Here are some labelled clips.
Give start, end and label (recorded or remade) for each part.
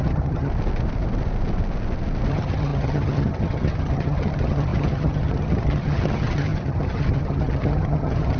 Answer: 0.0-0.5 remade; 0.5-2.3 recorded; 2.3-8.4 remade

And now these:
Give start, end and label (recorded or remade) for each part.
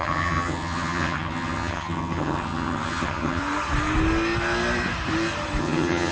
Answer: 0.0-3.4 remade; 3.4-5.6 recorded; 5.6-6.1 remade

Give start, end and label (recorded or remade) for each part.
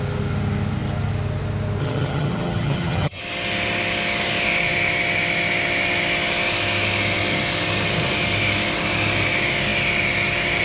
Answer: 0.0-1.8 recorded; 1.8-3.2 remade; 3.2-10.6 recorded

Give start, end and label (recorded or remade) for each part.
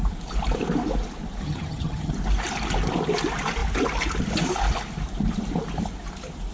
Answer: 0.0-1.4 recorded; 1.4-2.1 remade; 2.1-6.5 recorded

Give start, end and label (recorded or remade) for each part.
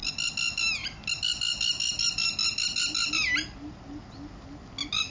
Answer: 0.0-5.1 recorded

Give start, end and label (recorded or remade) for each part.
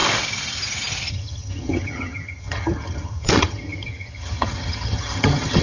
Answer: 0.0-1.1 recorded; 1.1-5.6 remade